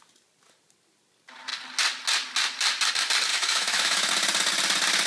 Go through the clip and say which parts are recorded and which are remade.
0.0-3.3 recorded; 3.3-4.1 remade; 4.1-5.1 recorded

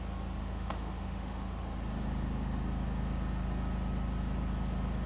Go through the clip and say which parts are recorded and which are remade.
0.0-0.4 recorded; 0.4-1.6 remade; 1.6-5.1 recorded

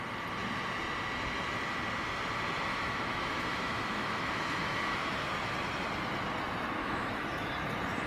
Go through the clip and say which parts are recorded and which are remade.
0.0-2.7 recorded; 2.7-5.3 remade; 5.3-6.8 recorded; 6.8-7.5 remade; 7.5-8.1 recorded

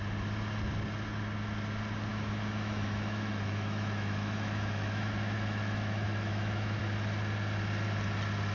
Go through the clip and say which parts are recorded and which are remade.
0.0-2.1 recorded; 2.1-6.8 remade; 6.8-8.5 recorded

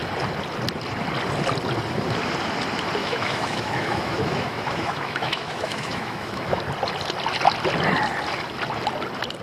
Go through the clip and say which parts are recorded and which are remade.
0.0-3.0 recorded; 3.0-6.6 remade; 6.6-9.4 recorded

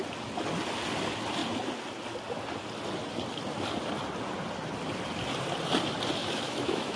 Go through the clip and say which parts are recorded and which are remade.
0.0-6.2 recorded; 6.2-7.0 remade